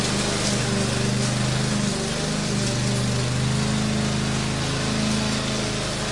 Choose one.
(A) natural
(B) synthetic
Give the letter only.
A